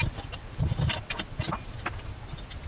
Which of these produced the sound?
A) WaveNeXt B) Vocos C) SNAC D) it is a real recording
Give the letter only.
D